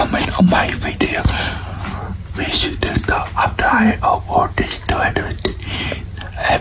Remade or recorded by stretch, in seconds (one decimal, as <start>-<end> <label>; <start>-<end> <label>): 0.0-6.6 recorded